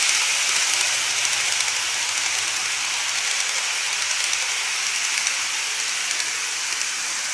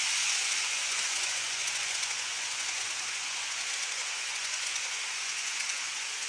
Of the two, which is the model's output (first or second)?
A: second